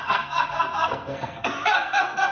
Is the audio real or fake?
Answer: fake